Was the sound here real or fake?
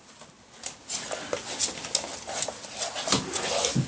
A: real